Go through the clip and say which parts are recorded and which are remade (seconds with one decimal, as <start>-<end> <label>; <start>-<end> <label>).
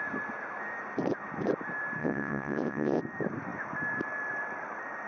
0.0-2.0 recorded; 2.0-3.0 remade; 3.0-5.1 recorded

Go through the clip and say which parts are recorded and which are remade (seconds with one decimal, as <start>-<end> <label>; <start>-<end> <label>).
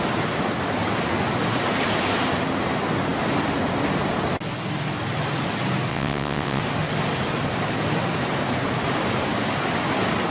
0.0-5.9 recorded; 5.9-6.6 remade; 6.6-10.3 recorded